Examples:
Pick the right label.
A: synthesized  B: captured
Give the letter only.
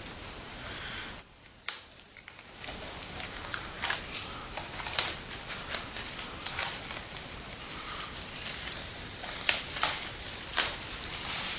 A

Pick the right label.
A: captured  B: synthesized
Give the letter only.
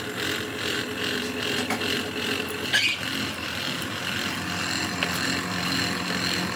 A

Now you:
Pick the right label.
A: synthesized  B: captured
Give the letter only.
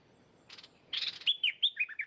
B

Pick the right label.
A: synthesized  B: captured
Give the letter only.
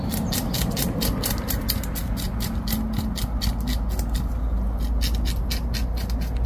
B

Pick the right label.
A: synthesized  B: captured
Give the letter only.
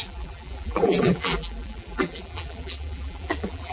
A